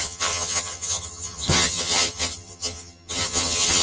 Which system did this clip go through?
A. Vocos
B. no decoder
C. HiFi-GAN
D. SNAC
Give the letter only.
C